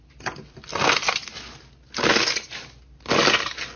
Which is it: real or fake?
real